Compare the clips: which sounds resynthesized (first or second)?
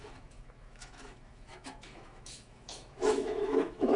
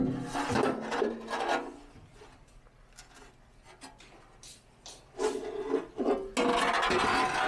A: first